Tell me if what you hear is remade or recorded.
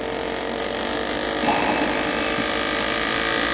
recorded